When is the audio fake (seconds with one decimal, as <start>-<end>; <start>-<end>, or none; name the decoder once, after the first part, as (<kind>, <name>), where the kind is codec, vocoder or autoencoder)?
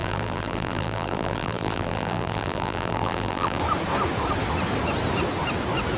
0.0-3.6 (vocoder, BigVGAN v2)